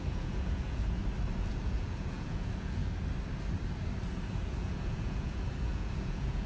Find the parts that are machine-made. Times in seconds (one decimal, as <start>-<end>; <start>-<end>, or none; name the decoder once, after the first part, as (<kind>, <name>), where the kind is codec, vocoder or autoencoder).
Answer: 0.0-1.0 (vocoder, Vocos); 1.5-2.8; 4.3-6.5